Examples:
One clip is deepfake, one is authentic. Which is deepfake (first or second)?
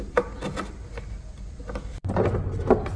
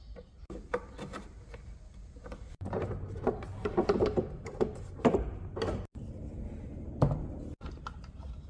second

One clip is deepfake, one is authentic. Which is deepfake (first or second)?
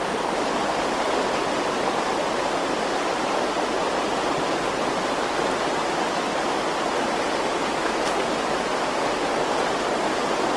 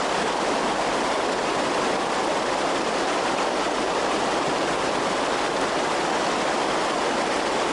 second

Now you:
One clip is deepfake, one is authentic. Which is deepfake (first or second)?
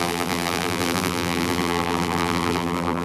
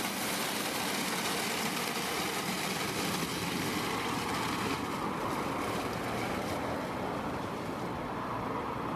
first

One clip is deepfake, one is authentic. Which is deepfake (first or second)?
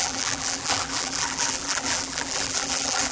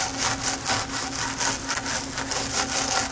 first